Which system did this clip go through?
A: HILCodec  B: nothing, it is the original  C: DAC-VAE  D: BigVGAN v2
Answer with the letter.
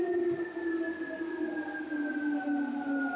B